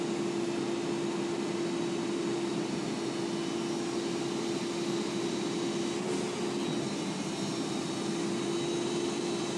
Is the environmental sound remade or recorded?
recorded